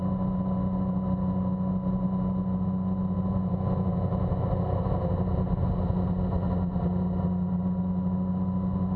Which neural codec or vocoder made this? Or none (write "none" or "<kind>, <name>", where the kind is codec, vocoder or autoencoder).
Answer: none